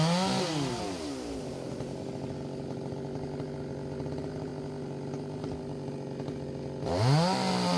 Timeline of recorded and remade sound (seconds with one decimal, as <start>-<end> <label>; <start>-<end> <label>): 0.0-7.8 recorded